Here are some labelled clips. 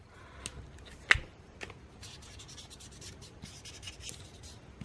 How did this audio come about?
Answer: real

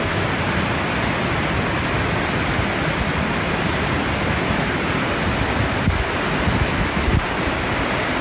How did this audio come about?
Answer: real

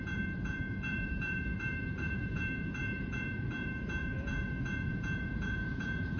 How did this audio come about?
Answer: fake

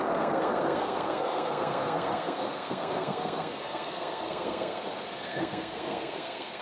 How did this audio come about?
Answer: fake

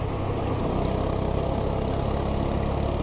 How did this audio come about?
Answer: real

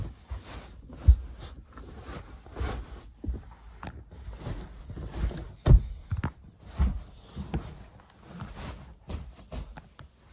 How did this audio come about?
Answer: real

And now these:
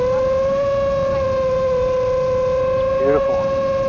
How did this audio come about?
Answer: real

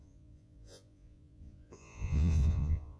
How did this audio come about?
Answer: fake